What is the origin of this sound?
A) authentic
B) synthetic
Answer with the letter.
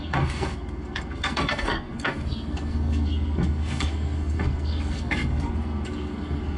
B